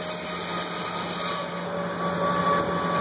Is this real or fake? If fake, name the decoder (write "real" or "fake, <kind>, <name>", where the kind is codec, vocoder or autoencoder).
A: real